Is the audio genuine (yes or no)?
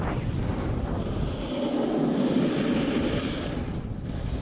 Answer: yes